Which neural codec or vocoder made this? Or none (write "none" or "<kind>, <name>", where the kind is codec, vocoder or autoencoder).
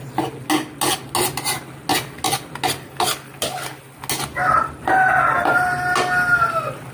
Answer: none